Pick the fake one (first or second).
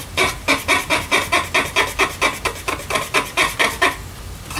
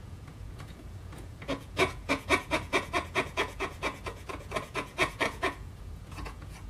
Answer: second